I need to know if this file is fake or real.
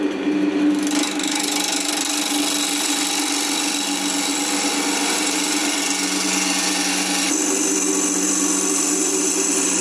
real